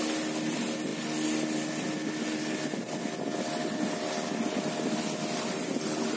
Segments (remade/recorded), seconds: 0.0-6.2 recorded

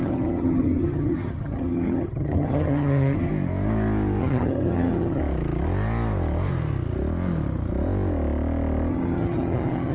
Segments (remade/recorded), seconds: 0.0-3.3 remade; 3.3-4.2 recorded; 4.2-5.2 remade; 5.2-8.9 recorded; 8.9-9.9 remade

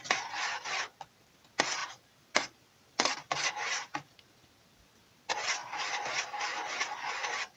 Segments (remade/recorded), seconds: 0.0-1.8 recorded; 1.8-5.1 remade; 5.1-5.6 recorded; 5.6-6.7 remade; 6.7-7.6 recorded